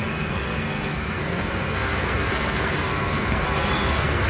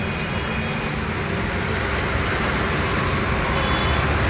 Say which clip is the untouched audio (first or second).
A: second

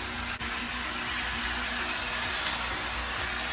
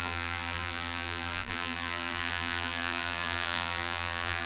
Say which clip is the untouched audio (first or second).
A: first